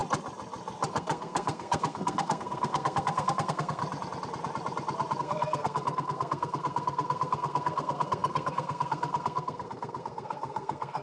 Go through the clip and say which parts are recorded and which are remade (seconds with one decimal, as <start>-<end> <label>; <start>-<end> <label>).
0.0-0.9 recorded; 0.9-3.8 remade; 3.8-5.2 recorded; 5.2-11.0 remade